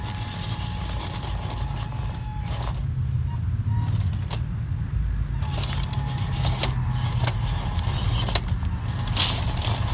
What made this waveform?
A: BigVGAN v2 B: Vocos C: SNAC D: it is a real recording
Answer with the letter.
D